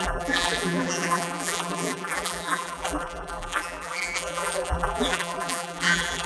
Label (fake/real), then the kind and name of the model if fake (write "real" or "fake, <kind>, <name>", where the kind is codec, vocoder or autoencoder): fake, vocoder, BigVGAN v2